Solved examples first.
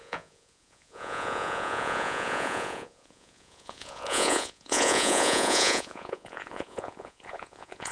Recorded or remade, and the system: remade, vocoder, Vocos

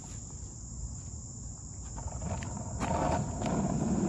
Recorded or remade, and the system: recorded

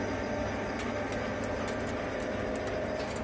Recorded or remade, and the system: recorded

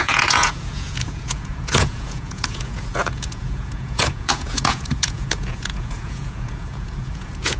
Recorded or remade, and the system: remade, vocoder, Vocos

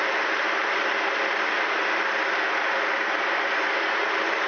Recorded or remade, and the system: recorded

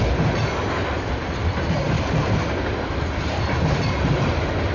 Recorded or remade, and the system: recorded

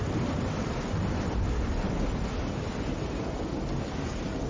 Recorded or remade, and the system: recorded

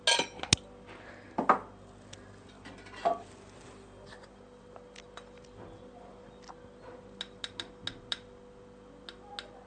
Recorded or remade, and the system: recorded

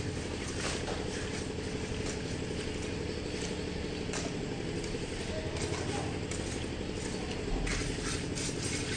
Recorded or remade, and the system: recorded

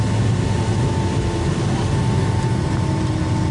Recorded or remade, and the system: recorded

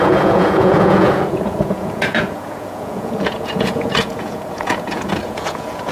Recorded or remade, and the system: remade, vocoder, Vocos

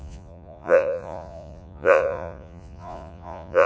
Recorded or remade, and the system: remade, vocoder, Vocos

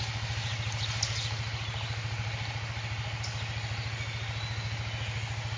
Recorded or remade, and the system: recorded